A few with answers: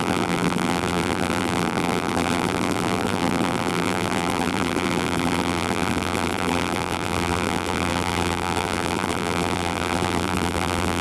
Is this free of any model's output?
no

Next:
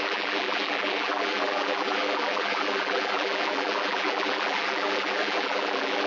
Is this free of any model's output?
no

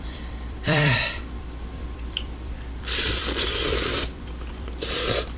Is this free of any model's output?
no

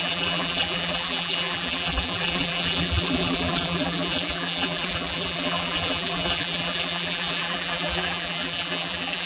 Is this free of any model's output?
no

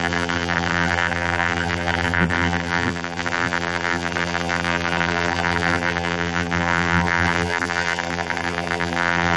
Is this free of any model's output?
no